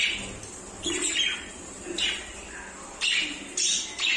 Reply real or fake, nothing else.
real